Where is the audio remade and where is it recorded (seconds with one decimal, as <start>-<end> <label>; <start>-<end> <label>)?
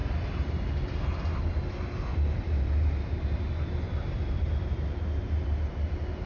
0.0-6.3 recorded